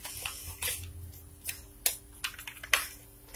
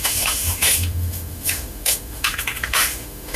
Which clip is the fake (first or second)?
second